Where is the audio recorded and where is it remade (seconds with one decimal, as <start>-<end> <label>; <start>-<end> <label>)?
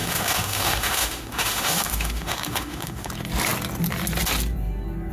0.0-3.1 remade; 3.1-5.1 recorded